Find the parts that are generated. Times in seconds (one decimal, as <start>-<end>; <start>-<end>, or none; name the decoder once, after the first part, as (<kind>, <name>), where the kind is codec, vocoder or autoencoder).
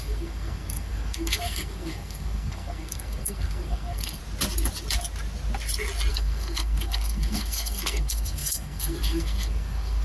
0.0-4.2 (codec, SNAC); 6.1-10.0